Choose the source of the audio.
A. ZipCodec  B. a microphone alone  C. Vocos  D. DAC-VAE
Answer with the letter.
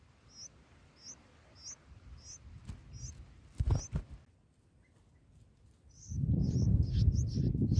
B